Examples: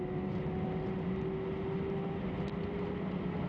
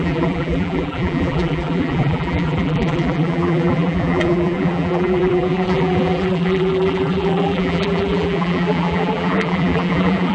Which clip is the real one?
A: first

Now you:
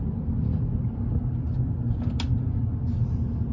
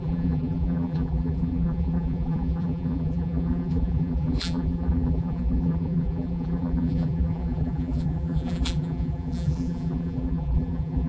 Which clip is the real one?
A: first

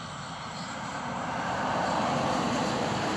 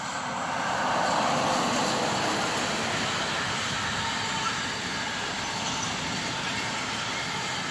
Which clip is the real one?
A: second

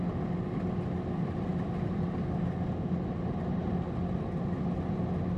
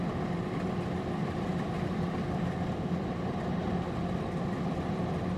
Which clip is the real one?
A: first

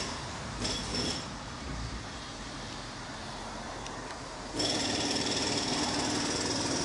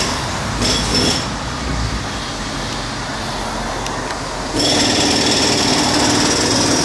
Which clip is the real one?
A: second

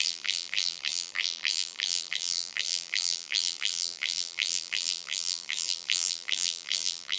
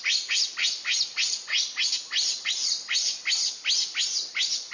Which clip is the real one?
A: second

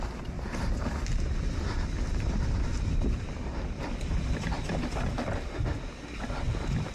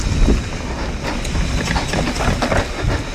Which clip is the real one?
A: second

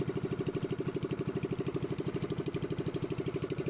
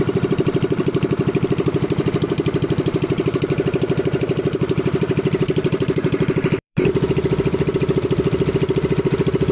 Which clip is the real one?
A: first